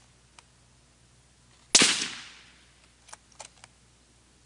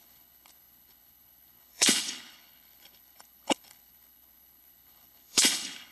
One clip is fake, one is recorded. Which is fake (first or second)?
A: second